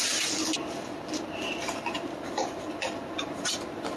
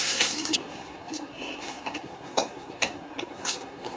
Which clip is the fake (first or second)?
second